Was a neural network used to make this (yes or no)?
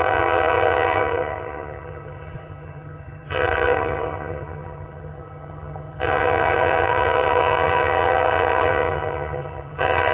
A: yes